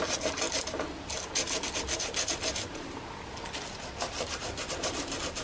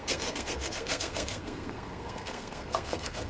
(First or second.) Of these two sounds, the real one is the first